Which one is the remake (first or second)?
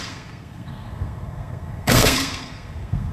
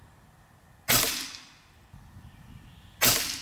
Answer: first